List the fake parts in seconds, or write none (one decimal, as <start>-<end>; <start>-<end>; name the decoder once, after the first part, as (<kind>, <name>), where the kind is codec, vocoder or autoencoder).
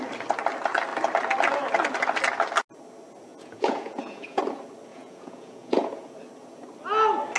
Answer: 3.3-4.4 (vocoder, Vocos); 4.9-5.9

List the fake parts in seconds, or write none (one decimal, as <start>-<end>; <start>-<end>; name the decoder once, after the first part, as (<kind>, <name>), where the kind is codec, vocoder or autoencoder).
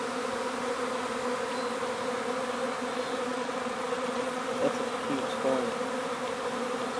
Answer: 3.3-4.4 (vocoder, Vocos)